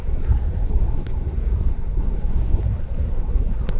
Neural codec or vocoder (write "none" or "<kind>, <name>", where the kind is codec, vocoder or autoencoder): codec, SNAC